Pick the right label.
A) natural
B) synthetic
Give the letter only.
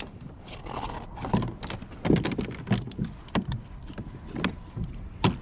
A